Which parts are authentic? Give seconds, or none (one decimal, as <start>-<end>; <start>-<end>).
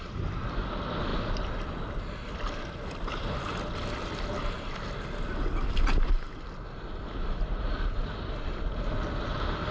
0.0-9.7